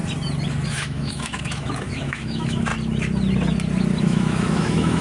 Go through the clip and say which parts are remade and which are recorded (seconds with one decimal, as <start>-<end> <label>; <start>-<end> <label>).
0.0-0.7 recorded; 0.7-2.7 remade; 2.7-4.0 recorded; 4.0-5.0 remade